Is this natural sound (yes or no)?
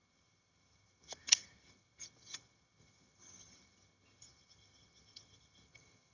no